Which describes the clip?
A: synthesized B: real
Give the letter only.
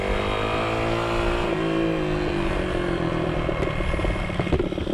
B